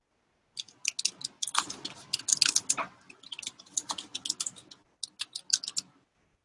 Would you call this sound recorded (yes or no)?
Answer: yes